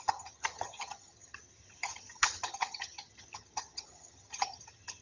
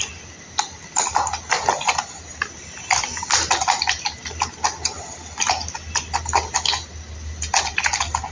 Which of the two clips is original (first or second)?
second